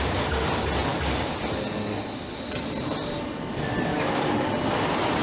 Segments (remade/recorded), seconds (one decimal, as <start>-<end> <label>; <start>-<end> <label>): 0.0-3.9 recorded; 3.9-4.5 remade; 4.5-5.2 recorded